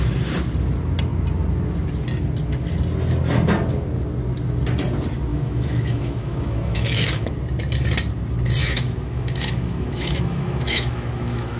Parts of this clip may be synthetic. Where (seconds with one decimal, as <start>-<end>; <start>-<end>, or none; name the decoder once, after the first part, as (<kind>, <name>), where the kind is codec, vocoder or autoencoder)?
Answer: 5.3-7.3 (autoencoder, DAC-VAE); 8.6-11.6